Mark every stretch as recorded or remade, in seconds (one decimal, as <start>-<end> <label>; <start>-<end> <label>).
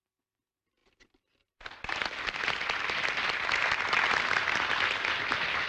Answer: 0.0-5.7 recorded